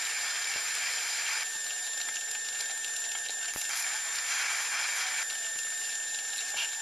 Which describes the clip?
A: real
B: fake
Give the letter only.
A